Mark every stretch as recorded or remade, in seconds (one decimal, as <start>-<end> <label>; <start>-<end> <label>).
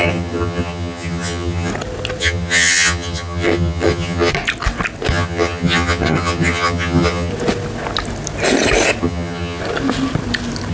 0.0-1.7 remade; 1.7-2.2 recorded; 2.2-4.3 remade; 4.3-5.1 recorded; 5.1-7.3 remade; 7.3-9.0 recorded; 9.0-9.6 remade; 9.6-10.7 recorded